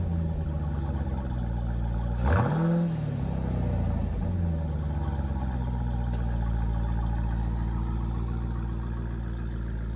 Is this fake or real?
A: real